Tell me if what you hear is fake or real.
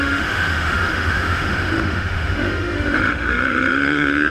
fake